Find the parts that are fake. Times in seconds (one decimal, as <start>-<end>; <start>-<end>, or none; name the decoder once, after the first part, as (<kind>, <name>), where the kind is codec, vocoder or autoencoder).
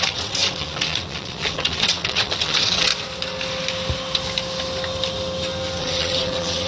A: 0.0-2.9 (vocoder, WaveNeXt); 5.8-6.7